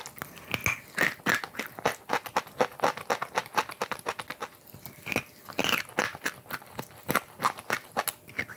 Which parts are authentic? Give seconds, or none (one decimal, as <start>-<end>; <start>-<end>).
0.0-8.6